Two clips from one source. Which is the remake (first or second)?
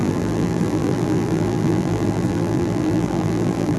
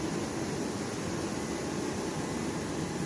first